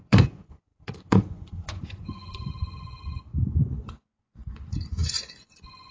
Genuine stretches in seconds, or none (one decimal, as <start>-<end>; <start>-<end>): none